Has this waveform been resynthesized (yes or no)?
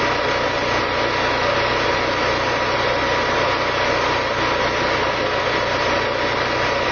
no